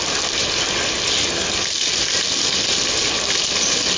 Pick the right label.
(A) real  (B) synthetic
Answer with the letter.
A